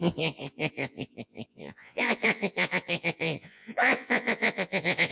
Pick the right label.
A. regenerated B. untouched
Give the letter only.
A